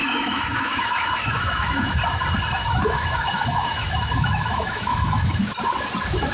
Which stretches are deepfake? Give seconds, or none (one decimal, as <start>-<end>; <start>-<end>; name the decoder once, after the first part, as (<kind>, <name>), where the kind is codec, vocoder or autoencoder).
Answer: 0.0-2.0 (autoencoder, DAC-VAE); 2.6-5.4